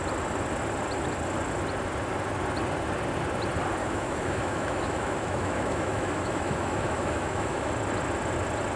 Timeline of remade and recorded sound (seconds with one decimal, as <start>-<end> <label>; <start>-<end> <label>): 0.0-3.8 recorded; 3.8-7.7 remade; 7.7-8.8 recorded